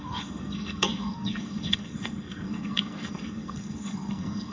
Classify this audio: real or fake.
fake